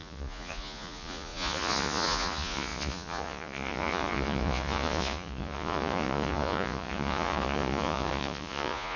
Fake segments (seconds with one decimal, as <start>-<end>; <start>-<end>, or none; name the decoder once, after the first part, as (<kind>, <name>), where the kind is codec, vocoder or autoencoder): 0.0-9.0 (vocoder, Vocos)